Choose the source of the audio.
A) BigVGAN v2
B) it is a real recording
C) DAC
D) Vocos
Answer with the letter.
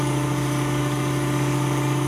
C